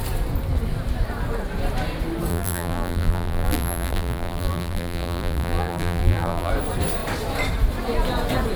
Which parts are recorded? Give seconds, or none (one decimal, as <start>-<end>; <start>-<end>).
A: 0.0-2.3; 6.5-8.6